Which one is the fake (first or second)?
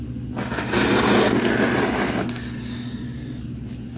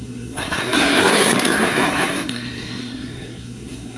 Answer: second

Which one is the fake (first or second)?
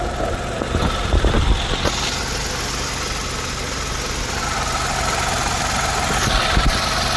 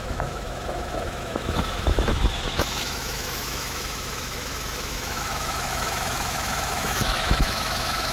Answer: second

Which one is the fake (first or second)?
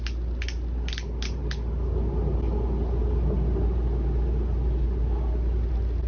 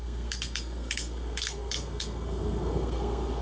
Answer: second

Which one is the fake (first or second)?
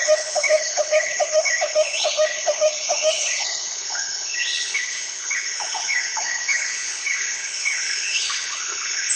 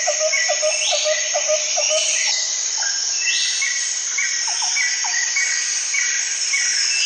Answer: first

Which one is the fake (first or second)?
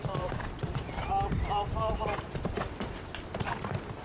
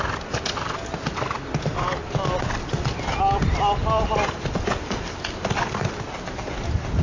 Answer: first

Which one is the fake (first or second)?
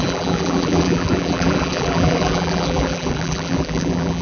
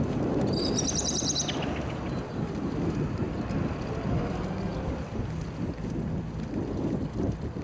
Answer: first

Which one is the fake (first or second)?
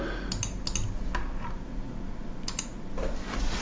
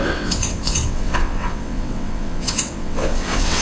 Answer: second